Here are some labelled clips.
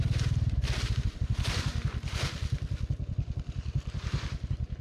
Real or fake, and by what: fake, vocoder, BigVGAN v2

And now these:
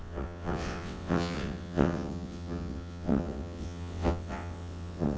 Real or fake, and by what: fake, vocoder, WaveNeXt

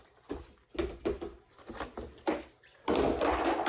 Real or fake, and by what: real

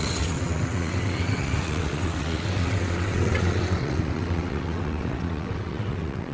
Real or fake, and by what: fake, vocoder, WaveNeXt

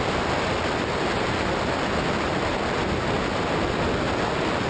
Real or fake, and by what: real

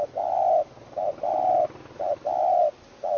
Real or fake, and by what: real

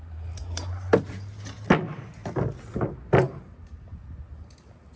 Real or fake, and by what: real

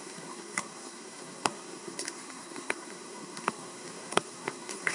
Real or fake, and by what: fake, codec, SNAC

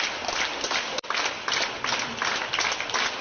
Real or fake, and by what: real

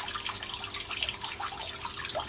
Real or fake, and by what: real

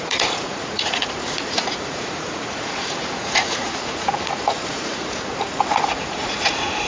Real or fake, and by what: fake, vocoder, Vocos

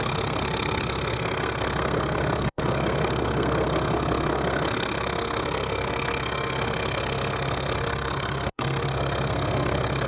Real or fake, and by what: fake, codec, SNAC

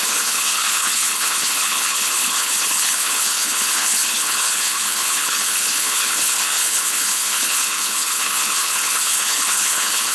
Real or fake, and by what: fake, codec, HILCodec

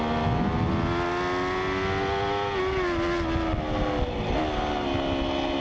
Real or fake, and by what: real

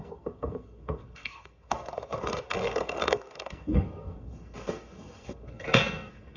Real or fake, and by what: fake, codec, SNAC